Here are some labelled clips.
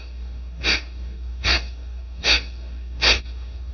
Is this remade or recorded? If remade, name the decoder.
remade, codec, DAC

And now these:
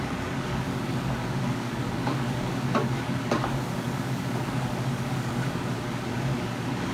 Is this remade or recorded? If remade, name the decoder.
remade, codec, DAC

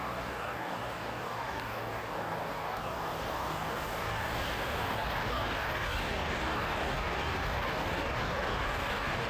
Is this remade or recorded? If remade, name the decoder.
remade, codec, DAC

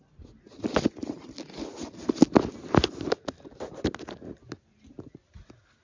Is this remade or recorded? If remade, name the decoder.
recorded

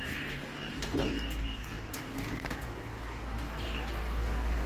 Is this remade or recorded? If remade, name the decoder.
remade, codec, DAC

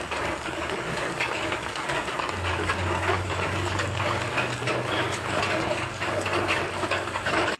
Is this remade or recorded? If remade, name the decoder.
remade, codec, DAC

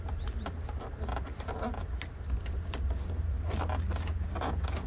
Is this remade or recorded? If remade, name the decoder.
recorded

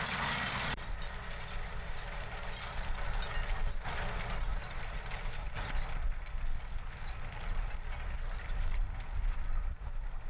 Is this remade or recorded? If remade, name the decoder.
recorded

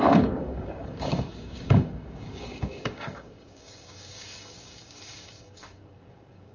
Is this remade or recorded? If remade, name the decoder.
remade, codec, DAC